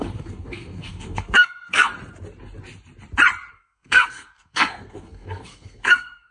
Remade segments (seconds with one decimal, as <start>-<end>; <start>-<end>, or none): 0.0-1.9; 3.5-6.3